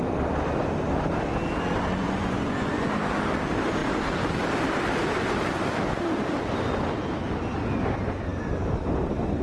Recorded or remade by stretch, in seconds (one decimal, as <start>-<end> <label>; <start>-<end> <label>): 0.0-2.0 recorded; 2.0-2.9 remade; 2.9-9.4 recorded